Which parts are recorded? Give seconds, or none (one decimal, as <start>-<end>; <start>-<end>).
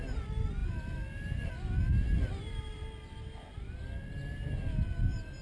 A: 0.0-5.4